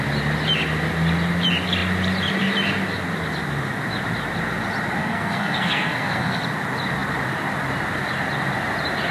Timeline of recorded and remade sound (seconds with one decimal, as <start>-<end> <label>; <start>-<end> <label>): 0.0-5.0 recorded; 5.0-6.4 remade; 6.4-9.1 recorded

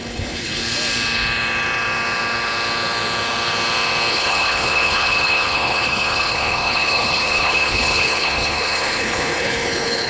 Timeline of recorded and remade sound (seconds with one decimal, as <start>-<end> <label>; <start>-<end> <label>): 0.0-0.6 remade; 0.6-4.1 recorded; 4.1-10.1 remade

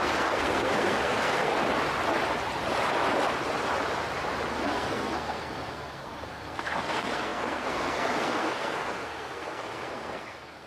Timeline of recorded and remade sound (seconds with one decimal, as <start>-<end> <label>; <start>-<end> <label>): 0.0-1.5 remade; 1.5-4.5 recorded; 4.5-10.7 remade

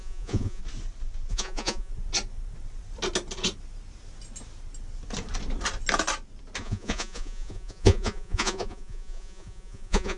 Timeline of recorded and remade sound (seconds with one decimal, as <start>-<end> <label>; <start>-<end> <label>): 0.0-0.6 remade; 0.6-1.3 recorded; 1.3-1.9 remade; 1.9-6.6 recorded; 6.6-10.2 remade

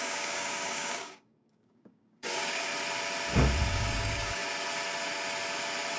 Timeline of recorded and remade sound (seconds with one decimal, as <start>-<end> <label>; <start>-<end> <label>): 0.0-2.7 remade; 2.7-3.7 recorded; 3.7-4.4 remade; 4.4-6.0 recorded

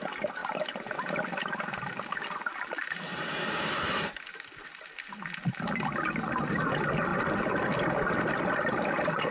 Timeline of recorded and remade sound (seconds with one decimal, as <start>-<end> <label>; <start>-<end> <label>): 0.0-9.3 recorded

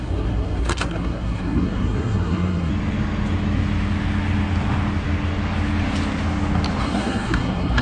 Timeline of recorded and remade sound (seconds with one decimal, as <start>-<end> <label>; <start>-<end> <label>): 0.0-2.7 remade; 2.7-6.8 recorded; 6.8-7.8 remade